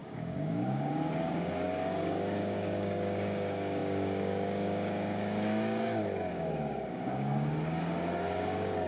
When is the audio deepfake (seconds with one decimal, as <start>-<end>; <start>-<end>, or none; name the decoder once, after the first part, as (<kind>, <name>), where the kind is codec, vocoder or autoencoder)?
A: 0.0-8.9 (codec, DAC)